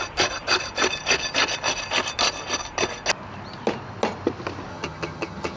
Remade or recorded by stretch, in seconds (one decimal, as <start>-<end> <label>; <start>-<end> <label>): 0.0-4.7 recorded; 4.7-5.6 remade